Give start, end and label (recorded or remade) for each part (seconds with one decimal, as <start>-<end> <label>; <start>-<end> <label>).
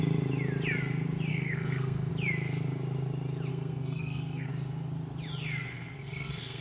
0.0-1.3 recorded; 1.3-2.1 remade; 2.1-3.5 recorded; 3.5-4.5 remade; 4.5-5.7 recorded; 5.7-6.6 remade